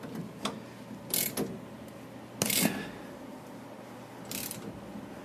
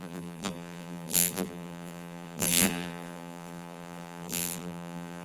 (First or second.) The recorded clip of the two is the first